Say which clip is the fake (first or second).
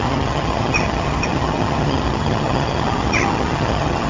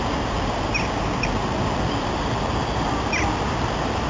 first